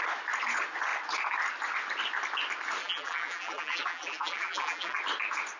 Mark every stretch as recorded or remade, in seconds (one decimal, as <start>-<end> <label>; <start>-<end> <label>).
0.0-2.8 recorded; 2.8-5.0 remade; 5.0-5.6 recorded